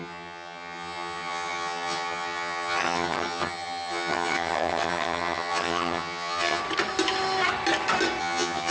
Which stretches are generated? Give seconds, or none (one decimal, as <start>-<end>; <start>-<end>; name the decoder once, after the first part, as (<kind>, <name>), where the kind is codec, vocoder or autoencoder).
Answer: 0.0-6.6 (vocoder, HiFi-GAN); 8.2-8.7